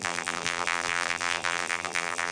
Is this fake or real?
fake